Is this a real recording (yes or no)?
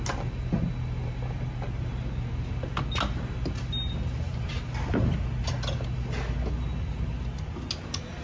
yes